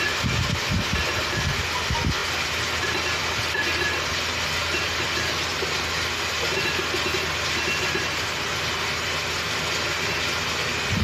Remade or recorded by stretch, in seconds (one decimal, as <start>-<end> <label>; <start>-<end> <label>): 0.0-2.2 recorded; 2.2-3.3 remade; 3.3-5.5 recorded; 5.5-6.4 remade; 6.4-11.0 recorded